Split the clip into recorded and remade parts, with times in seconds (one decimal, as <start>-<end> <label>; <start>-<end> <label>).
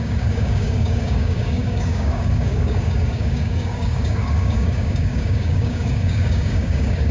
0.0-7.1 remade